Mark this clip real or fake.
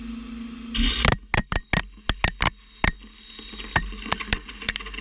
real